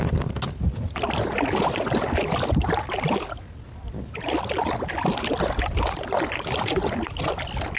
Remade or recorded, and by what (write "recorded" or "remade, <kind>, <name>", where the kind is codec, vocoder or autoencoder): recorded